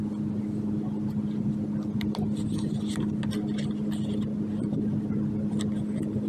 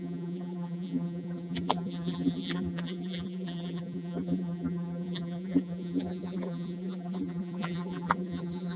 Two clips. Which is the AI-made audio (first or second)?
second